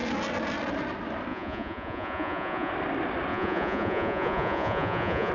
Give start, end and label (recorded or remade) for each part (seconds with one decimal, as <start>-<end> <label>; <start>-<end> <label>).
0.0-1.3 recorded; 1.3-2.7 remade; 2.7-3.3 recorded; 3.3-5.3 remade